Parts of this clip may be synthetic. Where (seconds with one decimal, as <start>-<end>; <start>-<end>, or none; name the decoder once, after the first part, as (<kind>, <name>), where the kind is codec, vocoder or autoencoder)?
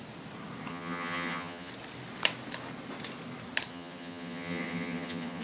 0.7-1.7 (vocoder, HiFi-GAN); 3.7-5.4